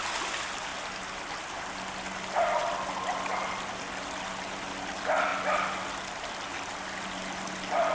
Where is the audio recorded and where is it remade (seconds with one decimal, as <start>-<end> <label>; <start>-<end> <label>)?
0.0-7.9 recorded